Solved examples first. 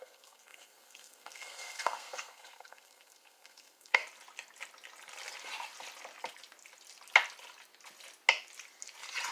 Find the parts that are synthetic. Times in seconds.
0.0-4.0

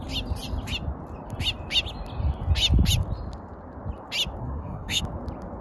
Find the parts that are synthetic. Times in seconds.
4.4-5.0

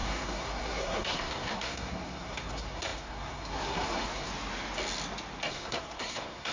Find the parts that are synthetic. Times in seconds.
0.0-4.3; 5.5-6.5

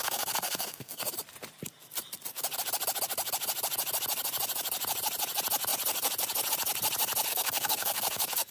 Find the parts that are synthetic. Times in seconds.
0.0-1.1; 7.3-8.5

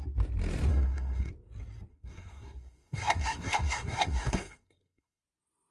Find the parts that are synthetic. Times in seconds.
0.7-1.3; 1.9-5.2

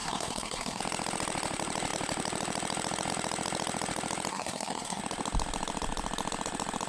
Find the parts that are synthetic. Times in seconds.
0.0-0.8; 4.3-5.0

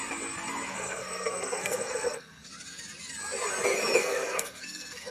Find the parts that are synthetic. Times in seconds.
0.7-2.5; 4.0-5.1